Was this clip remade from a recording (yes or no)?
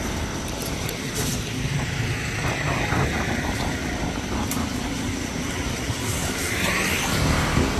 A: no